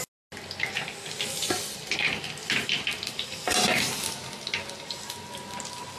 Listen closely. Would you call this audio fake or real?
real